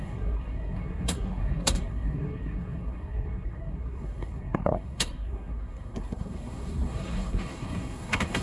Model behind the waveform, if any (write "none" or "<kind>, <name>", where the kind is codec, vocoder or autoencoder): codec, SNAC